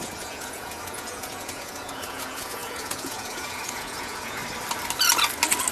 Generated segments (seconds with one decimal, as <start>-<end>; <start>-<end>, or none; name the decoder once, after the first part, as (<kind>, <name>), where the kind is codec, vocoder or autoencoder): 0.0-4.4 (vocoder, Vocos)